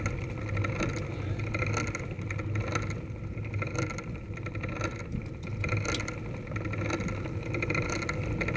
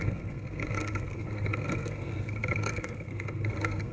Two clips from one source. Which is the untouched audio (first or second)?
first